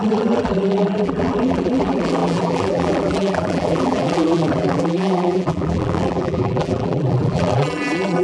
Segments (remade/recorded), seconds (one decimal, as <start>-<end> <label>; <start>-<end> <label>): 0.0-8.2 remade